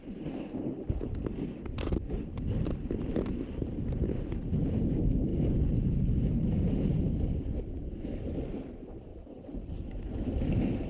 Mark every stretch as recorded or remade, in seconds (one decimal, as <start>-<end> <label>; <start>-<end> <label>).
0.0-9.1 recorded; 9.1-10.0 remade; 10.0-10.9 recorded